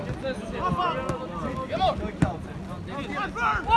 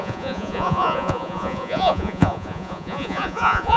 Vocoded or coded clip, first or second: second